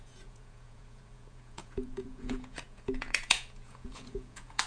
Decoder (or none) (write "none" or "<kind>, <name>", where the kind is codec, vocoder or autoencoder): vocoder, Vocos